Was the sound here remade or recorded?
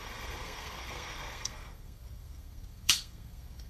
remade